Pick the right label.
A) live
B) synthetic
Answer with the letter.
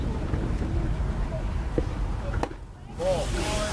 A